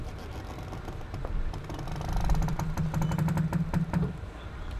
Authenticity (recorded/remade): recorded